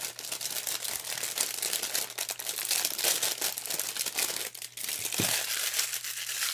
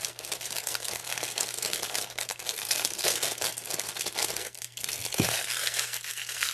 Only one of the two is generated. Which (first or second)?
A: second